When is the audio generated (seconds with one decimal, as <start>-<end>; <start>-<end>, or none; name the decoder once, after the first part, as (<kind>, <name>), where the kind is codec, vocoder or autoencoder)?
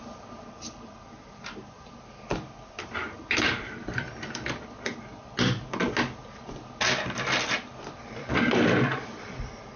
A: 0.0-4.9 (vocoder, BigVGAN v2); 7.8-9.8